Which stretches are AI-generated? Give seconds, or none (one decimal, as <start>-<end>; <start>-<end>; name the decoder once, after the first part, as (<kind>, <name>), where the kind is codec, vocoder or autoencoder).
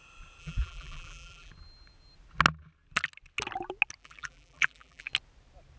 0.4-1.5 (vocoder, BigVGAN v2); 4.0-5.1